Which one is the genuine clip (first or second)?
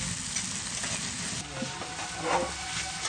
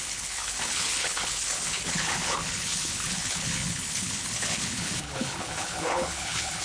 first